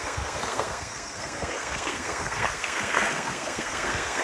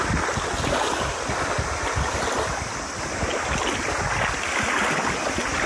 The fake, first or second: first